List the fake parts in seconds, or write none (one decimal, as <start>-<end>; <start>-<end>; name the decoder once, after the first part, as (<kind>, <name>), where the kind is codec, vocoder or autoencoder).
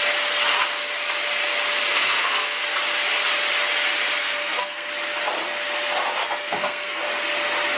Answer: 1.9-2.6 (codec, SNAC); 4.2-4.9; 6.2-7.0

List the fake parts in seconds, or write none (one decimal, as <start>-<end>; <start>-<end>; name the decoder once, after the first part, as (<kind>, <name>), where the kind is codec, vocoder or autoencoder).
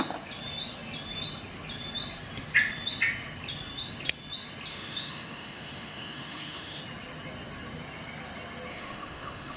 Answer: 4.7-6.8 (autoencoder, DAC-VAE); 8.7-9.6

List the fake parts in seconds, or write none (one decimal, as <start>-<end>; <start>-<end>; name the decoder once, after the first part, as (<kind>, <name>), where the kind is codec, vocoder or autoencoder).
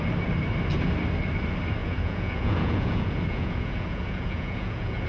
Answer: 1.8-5.1 (vocoder, Vocos)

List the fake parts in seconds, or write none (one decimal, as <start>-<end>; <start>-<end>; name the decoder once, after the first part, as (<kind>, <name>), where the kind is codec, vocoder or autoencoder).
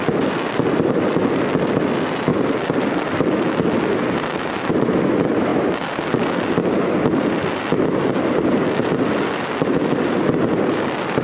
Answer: none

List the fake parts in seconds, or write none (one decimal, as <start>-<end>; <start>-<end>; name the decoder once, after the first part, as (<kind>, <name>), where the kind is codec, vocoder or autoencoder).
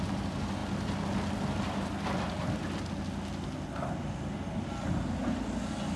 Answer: none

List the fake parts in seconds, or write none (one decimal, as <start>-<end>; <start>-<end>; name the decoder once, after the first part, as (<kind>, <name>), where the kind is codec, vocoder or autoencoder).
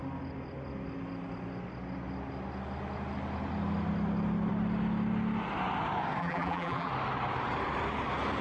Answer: 6.2-6.9 (vocoder, BigVGAN v2)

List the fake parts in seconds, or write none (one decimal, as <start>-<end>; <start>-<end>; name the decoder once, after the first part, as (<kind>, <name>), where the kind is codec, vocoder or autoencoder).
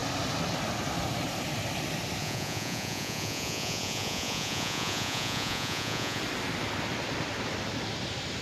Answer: 2.2-6.2 (vocoder, Vocos)